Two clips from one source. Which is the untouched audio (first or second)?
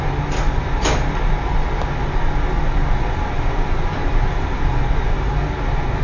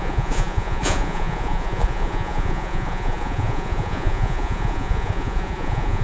first